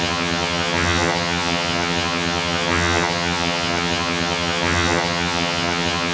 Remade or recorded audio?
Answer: remade